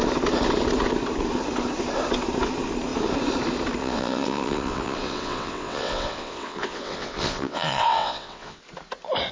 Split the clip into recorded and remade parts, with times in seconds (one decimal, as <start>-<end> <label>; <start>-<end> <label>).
0.0-3.8 recorded; 3.8-8.6 remade; 8.6-9.3 recorded